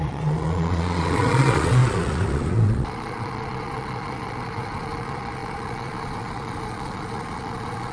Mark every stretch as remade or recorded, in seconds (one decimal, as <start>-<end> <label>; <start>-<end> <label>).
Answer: 0.0-7.9 remade

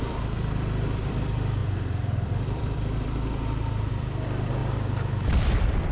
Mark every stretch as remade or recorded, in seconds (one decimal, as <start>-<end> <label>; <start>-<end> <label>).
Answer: 0.0-5.9 remade

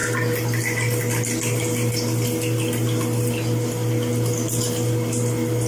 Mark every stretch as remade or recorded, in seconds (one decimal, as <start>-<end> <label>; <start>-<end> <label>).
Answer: 0.0-5.7 recorded

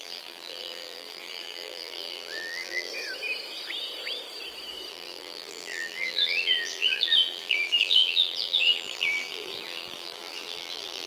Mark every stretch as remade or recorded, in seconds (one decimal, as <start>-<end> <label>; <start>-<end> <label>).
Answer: 0.0-2.9 remade; 2.9-4.9 recorded; 4.9-11.1 remade

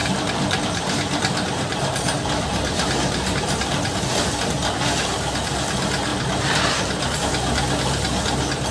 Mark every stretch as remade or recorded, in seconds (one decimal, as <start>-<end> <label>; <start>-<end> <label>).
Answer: 0.0-4.0 remade; 4.0-6.1 recorded; 6.1-7.2 remade; 7.2-8.7 recorded

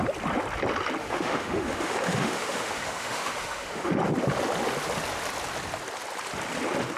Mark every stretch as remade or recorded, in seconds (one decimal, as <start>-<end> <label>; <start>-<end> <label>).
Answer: 0.0-1.0 recorded; 1.0-3.9 remade; 3.9-7.0 recorded

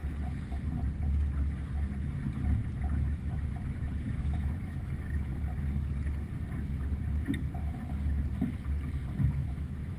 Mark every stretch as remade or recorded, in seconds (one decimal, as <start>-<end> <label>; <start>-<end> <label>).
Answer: 0.0-2.9 recorded; 2.9-5.3 remade; 5.3-9.3 recorded; 9.3-10.0 remade

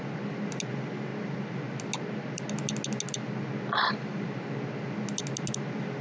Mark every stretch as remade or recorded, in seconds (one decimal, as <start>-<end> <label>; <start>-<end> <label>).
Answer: 0.0-6.0 recorded